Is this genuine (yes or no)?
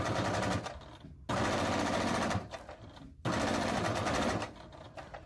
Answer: yes